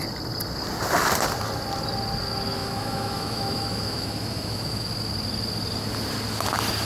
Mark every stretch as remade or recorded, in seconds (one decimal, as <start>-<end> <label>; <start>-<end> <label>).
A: 0.0-2.6 recorded; 2.6-4.9 remade; 4.9-6.9 recorded

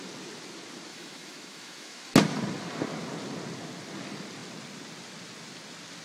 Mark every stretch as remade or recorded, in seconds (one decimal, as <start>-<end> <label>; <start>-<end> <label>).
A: 0.0-0.9 recorded; 0.9-2.1 remade; 2.1-6.0 recorded